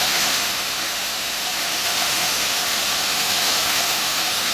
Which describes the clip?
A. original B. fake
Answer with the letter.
B